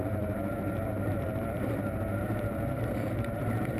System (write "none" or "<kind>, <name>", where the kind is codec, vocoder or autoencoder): vocoder, BigVGAN v2